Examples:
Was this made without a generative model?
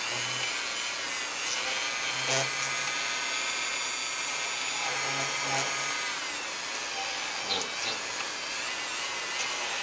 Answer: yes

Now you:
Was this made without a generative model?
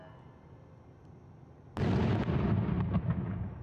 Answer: yes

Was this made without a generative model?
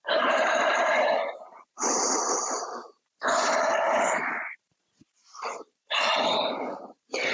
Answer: no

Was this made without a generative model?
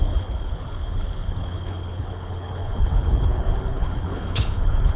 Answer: no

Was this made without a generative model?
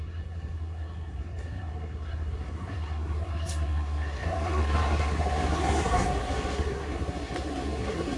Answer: no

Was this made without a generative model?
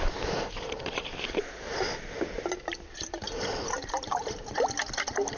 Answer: yes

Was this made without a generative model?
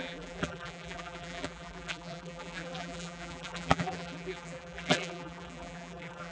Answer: no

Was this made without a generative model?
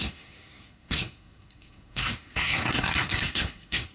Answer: no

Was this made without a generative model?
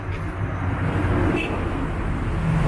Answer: yes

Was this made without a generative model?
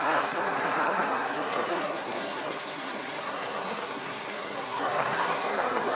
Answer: no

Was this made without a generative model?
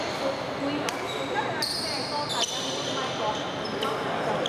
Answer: yes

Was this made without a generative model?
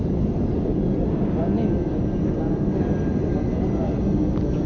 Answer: yes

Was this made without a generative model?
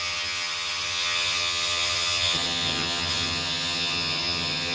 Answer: no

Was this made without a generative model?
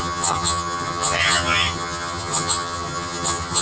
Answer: no